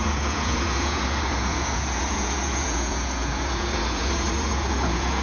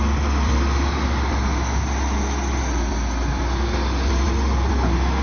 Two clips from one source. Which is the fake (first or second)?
first